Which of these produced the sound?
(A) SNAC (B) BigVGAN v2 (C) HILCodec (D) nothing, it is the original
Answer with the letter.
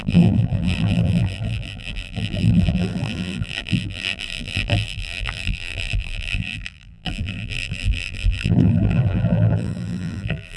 B